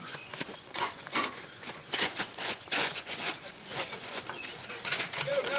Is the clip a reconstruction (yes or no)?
yes